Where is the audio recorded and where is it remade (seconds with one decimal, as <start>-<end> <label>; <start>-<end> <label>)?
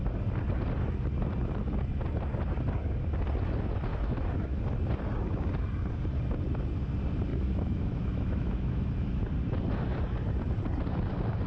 0.0-3.9 recorded; 3.9-4.6 remade; 4.6-7.3 recorded; 7.3-9.2 remade; 9.2-11.5 recorded